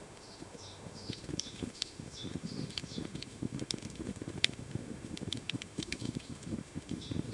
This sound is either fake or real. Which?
fake